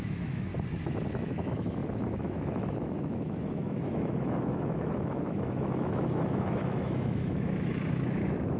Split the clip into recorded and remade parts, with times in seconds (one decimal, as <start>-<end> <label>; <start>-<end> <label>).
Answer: 0.0-0.5 remade; 0.5-1.1 recorded; 1.1-8.6 remade